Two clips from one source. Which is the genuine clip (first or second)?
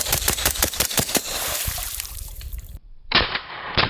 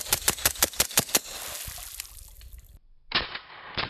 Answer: second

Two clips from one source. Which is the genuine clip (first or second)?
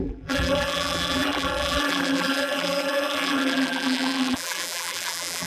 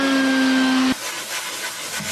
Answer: second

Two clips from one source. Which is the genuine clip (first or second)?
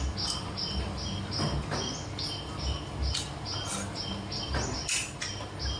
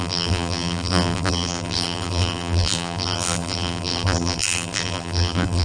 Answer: first